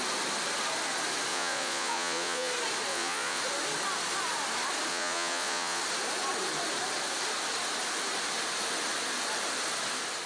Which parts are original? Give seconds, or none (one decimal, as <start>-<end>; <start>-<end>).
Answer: 0.0-1.3; 2.5-2.9; 3.4-4.9; 5.8-10.3